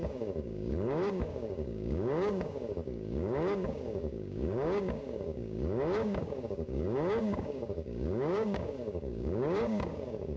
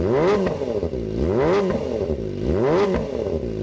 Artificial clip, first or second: first